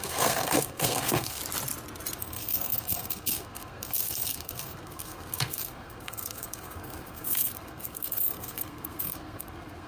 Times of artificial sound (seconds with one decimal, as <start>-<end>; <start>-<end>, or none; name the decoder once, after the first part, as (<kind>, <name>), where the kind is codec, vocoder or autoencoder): 0.0-1.4 (codec, SNAC); 2.2-9.9